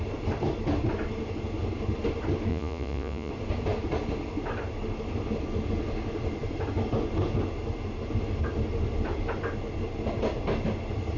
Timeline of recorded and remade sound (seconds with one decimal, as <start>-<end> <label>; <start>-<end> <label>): 0.0-2.5 recorded; 2.5-3.3 remade; 3.3-11.2 recorded